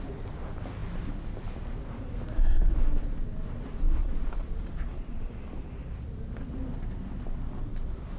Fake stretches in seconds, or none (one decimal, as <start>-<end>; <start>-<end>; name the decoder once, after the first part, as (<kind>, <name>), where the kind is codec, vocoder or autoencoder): 4.0-5.3 (vocoder, Vocos)